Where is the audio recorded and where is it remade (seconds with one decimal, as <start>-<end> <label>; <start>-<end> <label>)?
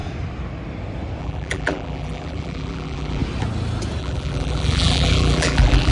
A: 0.0-1.2 recorded; 1.2-3.2 remade; 3.2-4.0 recorded; 4.0-5.9 remade